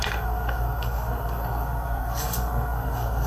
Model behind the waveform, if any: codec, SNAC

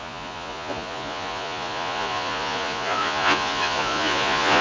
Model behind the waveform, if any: vocoder, Vocos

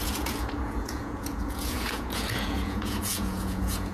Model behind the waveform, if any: vocoder, Vocos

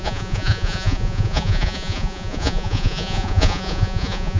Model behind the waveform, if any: vocoder, Vocos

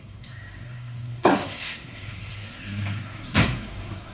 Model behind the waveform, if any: codec, SNAC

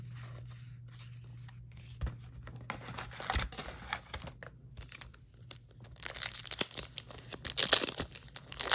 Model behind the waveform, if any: none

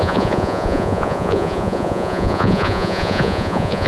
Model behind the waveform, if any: vocoder, Vocos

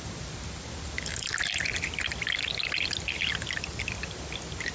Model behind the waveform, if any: none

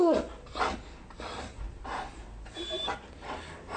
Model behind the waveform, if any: none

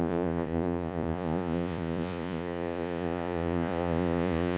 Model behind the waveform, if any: vocoder, Vocos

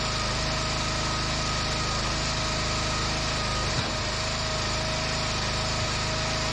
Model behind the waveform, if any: none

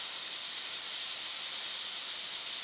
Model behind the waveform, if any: none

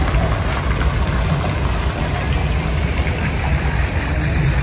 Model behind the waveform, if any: none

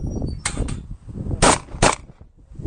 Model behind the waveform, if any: none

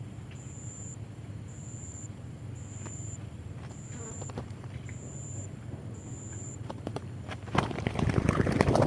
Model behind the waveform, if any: vocoder, BigVGAN v2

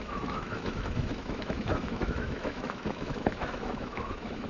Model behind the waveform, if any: autoencoder, DAC-VAE